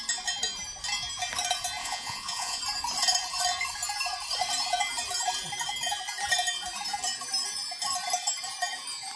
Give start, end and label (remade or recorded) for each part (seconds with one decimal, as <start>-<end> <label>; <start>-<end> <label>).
0.0-1.8 recorded; 1.8-2.6 remade; 2.6-9.2 recorded

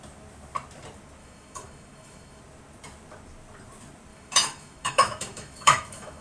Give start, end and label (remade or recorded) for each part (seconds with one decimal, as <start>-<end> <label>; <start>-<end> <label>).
0.0-1.2 recorded; 1.2-2.4 remade; 2.4-4.1 recorded; 4.1-6.2 remade

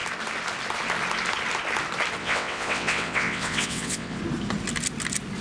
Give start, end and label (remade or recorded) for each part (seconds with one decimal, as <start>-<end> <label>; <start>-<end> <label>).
0.0-2.2 recorded; 2.2-4.2 remade; 4.2-5.4 recorded